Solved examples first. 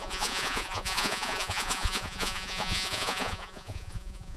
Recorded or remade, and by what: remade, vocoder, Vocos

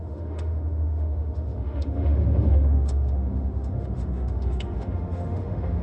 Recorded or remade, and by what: remade, autoencoder, DAC-VAE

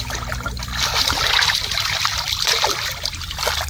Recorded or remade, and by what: remade, vocoder, BigVGAN v2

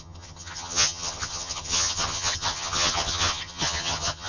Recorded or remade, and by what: remade, vocoder, HiFi-GAN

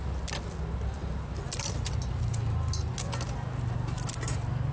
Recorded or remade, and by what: recorded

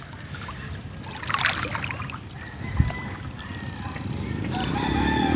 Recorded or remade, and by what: recorded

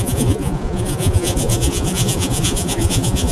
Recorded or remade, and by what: remade, vocoder, Vocos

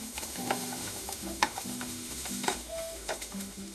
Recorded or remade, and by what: remade, autoencoder, DAC-VAE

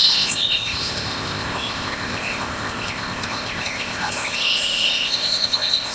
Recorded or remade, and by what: remade, codec, ZipCodec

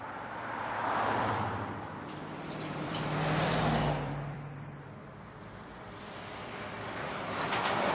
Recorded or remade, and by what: remade, vocoder, BigVGAN v2